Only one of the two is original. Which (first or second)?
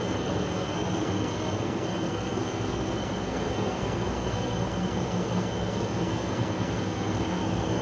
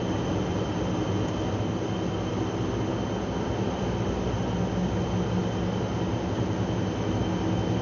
second